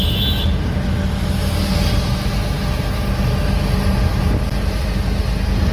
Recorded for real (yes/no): yes